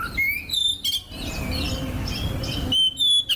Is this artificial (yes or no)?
no